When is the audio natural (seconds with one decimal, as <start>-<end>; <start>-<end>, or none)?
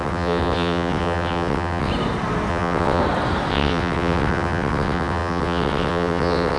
1.9-2.5; 3.0-3.5